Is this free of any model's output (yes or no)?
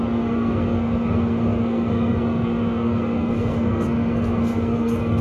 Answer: no